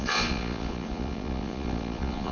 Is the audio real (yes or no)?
no